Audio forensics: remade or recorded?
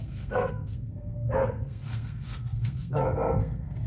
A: remade